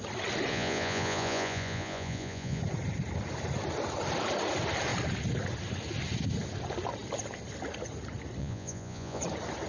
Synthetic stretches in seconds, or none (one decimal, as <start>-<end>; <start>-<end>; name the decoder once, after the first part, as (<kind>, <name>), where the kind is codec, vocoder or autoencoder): 0.5-2.6 (vocoder, Vocos); 8.4-9.2